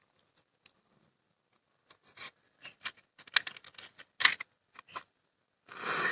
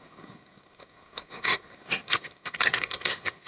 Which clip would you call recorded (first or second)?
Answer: first